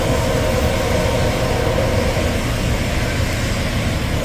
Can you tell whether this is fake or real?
real